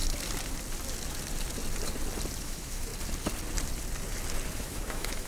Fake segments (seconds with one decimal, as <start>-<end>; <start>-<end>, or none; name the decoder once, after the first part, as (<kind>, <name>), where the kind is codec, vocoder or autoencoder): 2.4-2.9 (autoencoder, DAC-VAE); 4.5-5.3